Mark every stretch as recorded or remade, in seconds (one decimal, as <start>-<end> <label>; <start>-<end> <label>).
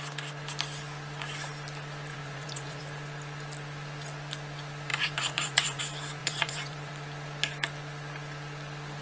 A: 0.0-2.1 recorded; 2.1-2.8 remade; 2.8-4.9 recorded; 4.9-5.8 remade; 5.8-6.2 recorded; 6.2-6.9 remade; 6.9-9.0 recorded